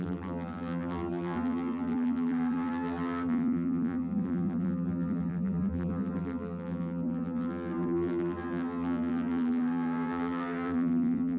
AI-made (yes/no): yes